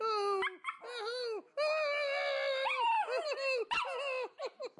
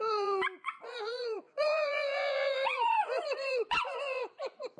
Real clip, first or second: first